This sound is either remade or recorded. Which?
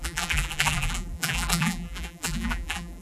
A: remade